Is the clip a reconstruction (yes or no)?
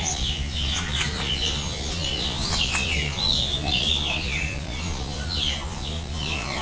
yes